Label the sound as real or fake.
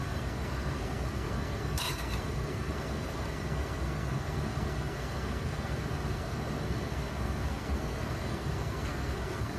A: fake